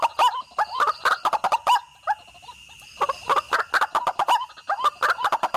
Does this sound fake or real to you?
real